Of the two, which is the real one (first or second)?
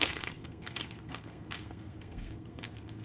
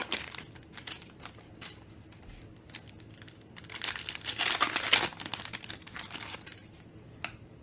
second